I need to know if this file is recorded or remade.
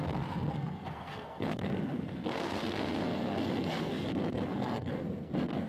remade